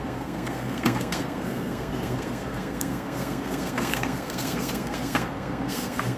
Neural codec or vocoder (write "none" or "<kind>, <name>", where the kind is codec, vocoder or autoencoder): codec, SNAC